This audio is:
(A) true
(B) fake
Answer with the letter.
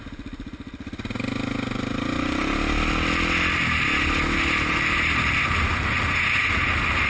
A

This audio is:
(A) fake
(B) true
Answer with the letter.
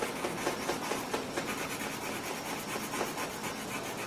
A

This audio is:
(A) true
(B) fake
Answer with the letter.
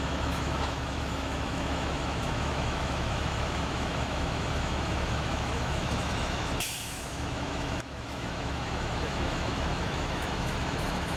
B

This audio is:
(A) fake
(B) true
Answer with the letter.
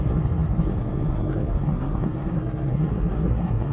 A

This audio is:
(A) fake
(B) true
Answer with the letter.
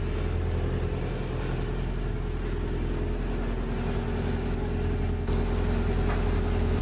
B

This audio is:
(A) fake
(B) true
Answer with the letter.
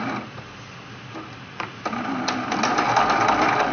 B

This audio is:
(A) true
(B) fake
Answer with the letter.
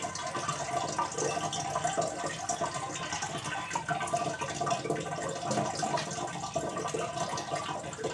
A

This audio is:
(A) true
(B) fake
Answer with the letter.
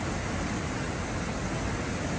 A